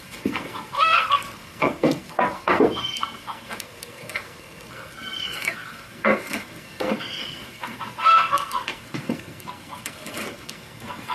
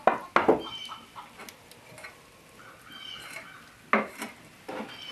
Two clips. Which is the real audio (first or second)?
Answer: second